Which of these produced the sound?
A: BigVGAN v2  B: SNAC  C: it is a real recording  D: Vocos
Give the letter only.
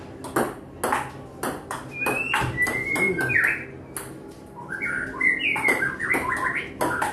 C